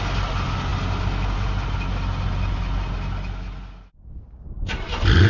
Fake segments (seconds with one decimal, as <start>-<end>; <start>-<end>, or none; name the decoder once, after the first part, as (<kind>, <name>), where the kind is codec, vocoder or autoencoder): none